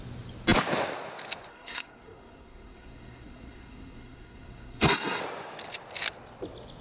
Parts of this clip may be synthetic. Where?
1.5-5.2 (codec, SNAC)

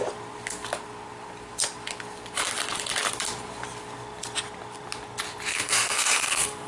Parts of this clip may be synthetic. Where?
5.5-6.7 (codec, SNAC)

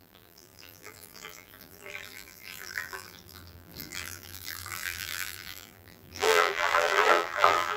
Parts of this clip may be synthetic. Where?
0.0-7.8 (vocoder, BigVGAN v2)

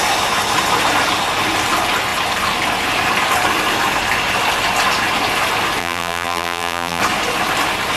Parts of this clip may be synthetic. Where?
5.8-7.0 (vocoder, BigVGAN v2)